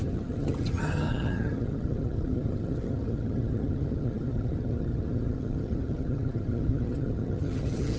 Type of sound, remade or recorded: remade